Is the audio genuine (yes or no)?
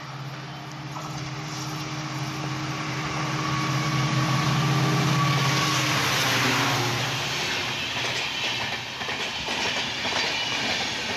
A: yes